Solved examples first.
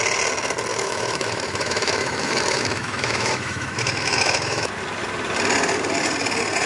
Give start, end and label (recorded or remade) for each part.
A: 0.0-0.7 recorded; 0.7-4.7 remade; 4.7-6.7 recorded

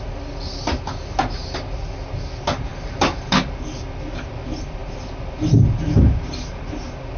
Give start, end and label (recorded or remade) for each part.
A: 0.0-7.2 recorded

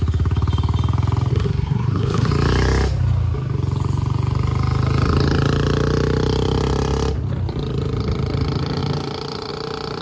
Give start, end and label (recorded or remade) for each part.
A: 0.0-1.3 recorded; 1.3-2.3 remade; 2.3-10.0 recorded

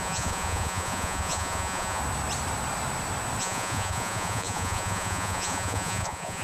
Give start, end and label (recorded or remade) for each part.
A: 0.0-2.0 remade; 2.0-3.4 recorded; 3.4-6.4 remade